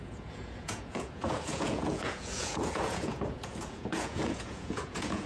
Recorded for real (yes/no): no